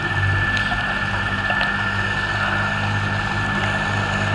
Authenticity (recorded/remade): recorded